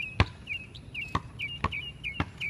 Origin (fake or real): real